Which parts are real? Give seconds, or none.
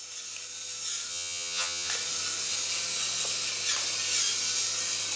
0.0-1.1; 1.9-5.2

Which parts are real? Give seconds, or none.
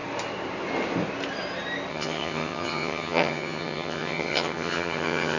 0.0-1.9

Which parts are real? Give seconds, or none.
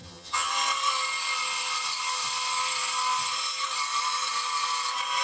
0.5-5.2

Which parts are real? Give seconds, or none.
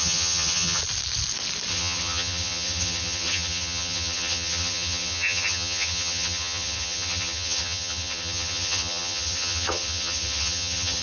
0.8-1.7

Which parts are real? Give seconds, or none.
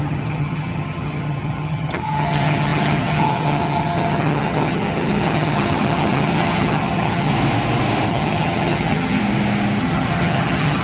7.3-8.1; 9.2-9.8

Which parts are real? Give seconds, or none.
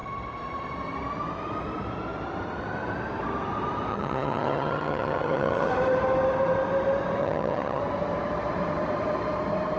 0.0-3.9; 5.7-7.2; 7.8-9.8